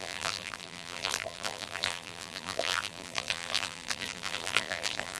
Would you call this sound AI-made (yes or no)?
yes